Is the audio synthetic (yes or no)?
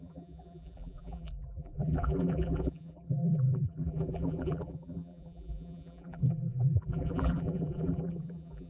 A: yes